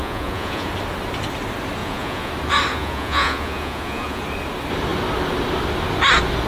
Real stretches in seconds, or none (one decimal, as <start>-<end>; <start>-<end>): 0.7-1.8; 2.3-2.7; 4.2-6.5